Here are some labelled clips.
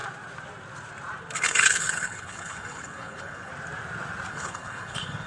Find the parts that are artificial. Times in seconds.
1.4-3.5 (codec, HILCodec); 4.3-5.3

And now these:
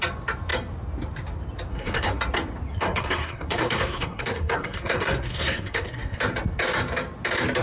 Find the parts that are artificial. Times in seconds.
1.7-2.2 (codec, SNAC); 2.7-6.2